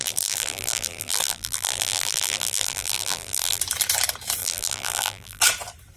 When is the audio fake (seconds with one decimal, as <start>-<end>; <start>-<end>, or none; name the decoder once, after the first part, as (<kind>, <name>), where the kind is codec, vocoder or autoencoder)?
0.0-3.6 (vocoder, BigVGAN v2); 4.4-5.4